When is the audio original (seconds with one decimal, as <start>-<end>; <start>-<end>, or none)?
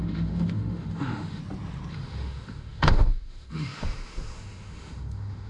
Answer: 1.4-1.9